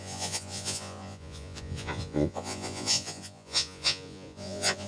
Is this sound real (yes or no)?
no